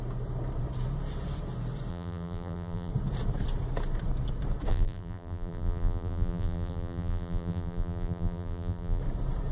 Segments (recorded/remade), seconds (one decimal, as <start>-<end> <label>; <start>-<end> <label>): 0.0-1.9 recorded; 1.9-2.9 remade; 2.9-4.7 recorded; 4.7-9.0 remade; 9.0-9.5 recorded